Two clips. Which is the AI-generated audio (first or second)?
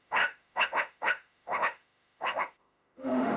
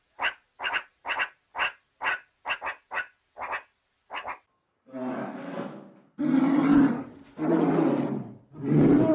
first